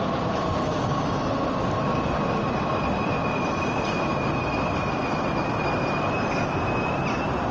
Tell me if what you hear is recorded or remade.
recorded